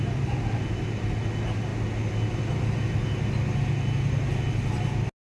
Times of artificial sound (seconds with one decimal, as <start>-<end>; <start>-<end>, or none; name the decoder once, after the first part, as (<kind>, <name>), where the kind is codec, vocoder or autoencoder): none